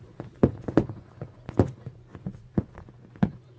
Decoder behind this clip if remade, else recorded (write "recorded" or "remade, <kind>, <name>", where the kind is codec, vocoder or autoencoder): remade, vocoder, Vocos